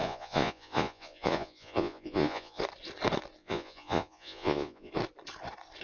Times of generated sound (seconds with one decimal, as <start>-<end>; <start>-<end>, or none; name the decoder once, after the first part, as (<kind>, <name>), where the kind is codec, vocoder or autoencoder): 0.0-2.6 (vocoder, Vocos); 3.4-4.9